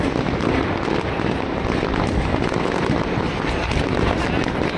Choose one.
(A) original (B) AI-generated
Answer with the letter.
A